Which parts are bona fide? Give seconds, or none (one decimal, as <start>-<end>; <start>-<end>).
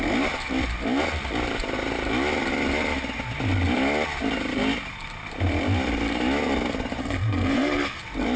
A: 0.0-7.0; 8.0-8.4